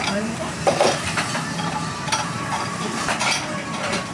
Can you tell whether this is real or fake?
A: fake